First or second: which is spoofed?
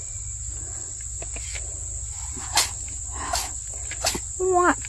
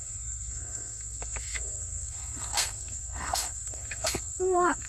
second